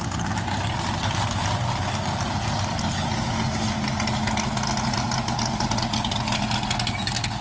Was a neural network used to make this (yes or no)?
no